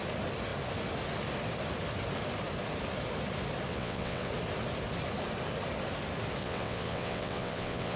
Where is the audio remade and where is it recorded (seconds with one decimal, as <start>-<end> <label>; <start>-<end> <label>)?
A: 0.0-3.7 recorded; 3.7-4.3 remade; 4.3-6.4 recorded; 6.4-8.0 remade